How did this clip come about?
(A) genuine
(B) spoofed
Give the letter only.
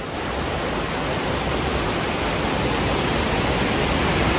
A